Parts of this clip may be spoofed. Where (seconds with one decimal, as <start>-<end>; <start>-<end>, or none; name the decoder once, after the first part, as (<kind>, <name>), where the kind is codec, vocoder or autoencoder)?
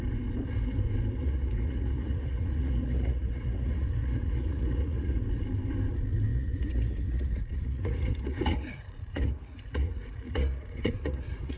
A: 1.2-5.2 (vocoder, Vocos); 6.3-11.6